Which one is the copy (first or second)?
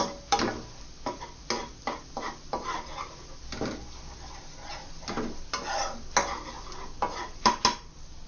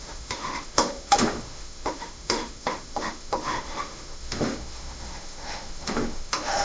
second